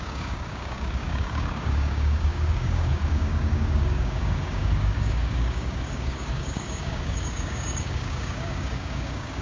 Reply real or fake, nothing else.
fake